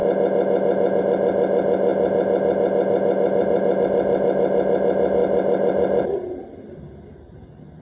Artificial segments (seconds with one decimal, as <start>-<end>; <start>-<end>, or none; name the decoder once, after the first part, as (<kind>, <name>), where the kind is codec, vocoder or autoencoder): none